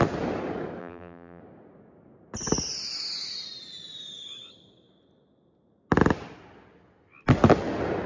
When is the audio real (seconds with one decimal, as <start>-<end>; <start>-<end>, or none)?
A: 0.0-0.8; 1.4-8.1